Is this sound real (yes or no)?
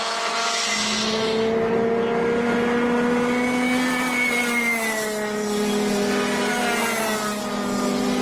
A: yes